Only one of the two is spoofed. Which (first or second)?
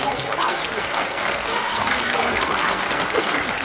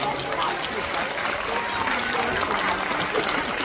first